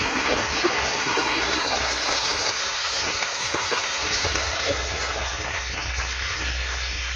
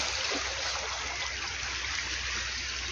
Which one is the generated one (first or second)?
first